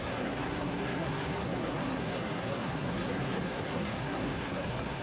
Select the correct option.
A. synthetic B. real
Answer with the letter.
A